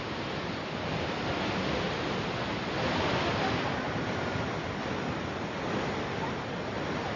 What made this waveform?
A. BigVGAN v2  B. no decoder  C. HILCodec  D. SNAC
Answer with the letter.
B